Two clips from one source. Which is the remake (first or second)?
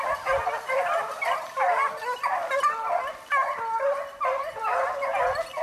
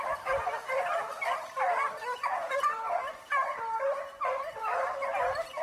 second